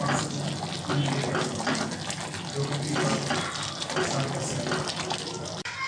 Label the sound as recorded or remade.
recorded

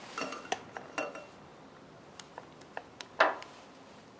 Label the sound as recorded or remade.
recorded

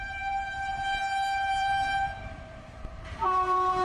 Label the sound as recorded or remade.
remade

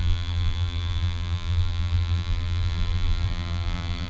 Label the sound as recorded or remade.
remade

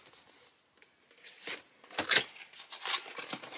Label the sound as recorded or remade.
recorded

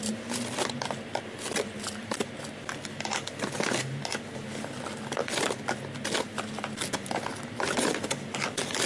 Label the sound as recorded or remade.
recorded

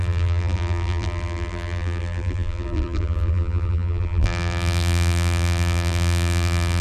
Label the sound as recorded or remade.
remade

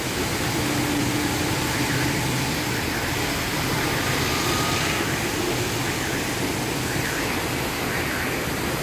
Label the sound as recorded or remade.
recorded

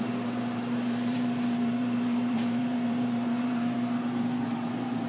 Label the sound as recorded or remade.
remade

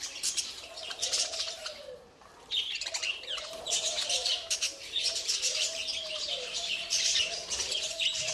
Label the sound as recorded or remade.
remade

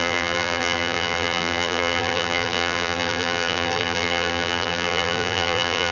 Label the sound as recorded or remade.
remade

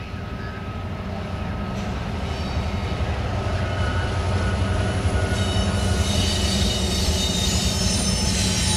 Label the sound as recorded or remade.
recorded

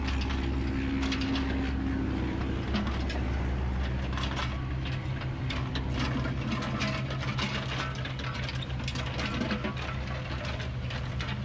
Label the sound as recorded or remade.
recorded